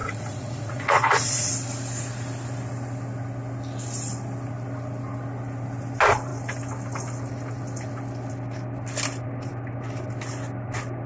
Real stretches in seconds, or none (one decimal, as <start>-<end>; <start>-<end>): 1.5-11.1